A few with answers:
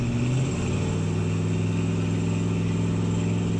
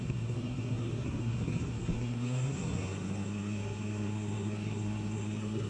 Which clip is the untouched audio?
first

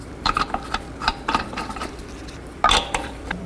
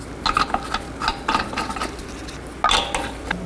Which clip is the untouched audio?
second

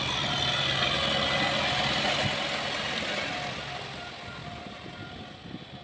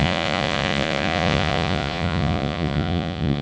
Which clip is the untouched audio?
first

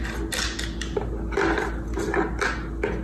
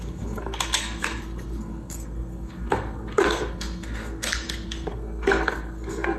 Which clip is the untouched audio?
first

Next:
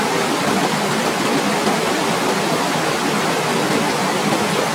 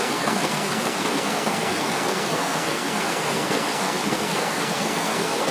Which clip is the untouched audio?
first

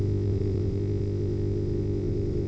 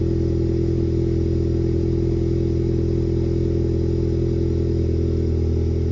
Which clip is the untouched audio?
second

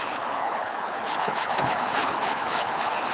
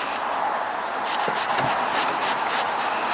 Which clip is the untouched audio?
second